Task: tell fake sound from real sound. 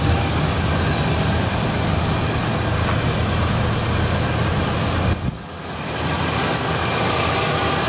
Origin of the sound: real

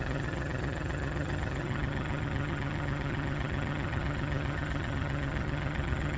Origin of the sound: fake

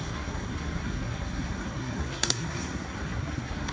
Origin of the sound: fake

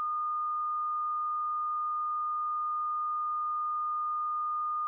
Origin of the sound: real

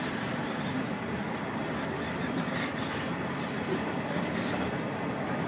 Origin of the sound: real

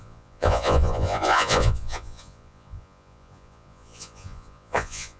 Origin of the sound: fake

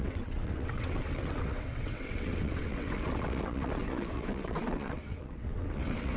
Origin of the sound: fake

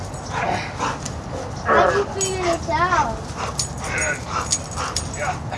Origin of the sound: real